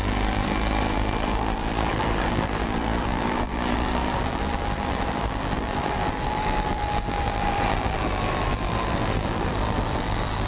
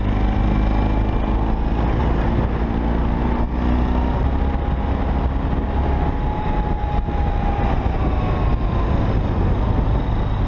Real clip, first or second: second